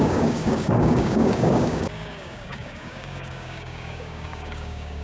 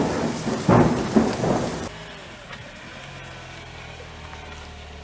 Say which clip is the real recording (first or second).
second